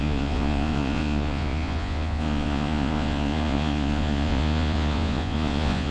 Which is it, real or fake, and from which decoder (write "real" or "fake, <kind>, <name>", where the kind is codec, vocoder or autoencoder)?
fake, vocoder, Vocos